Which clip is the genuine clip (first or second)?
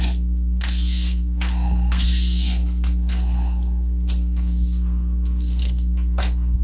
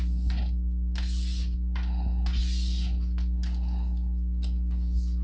second